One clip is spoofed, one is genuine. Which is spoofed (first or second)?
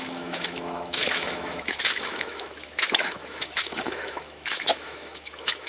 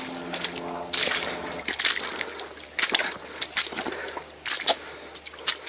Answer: first